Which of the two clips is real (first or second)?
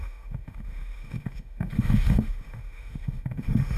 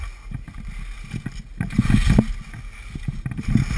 second